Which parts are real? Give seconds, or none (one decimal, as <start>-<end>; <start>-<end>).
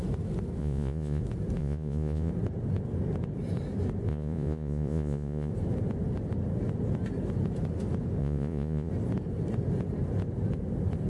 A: 0.0-0.6; 1.2-1.6; 2.3-4.1; 5.5-8.2; 8.9-11.1